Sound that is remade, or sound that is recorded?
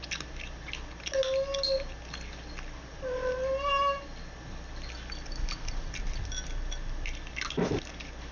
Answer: recorded